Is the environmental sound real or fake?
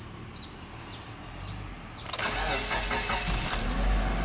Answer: real